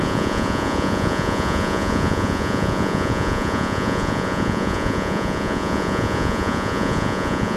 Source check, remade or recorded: remade